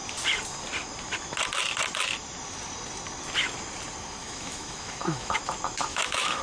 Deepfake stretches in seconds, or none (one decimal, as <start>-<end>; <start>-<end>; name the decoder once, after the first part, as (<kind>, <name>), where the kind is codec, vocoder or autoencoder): 4.2-5.4 (autoencoder, DAC-VAE); 5.9-6.4